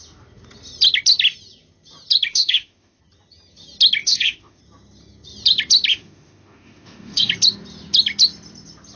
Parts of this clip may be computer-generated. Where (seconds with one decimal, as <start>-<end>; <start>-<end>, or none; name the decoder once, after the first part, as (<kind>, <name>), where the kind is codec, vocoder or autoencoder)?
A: 2.3-3.0 (autoencoder, DAC-VAE); 4.0-4.6; 5.9-7.3